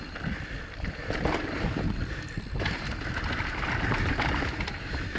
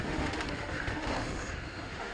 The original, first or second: first